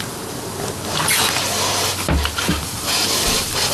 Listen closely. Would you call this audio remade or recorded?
recorded